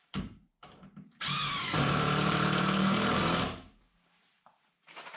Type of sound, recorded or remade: remade